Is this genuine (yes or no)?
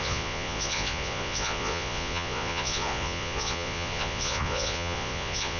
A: no